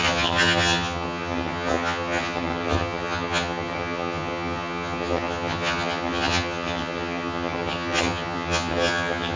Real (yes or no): no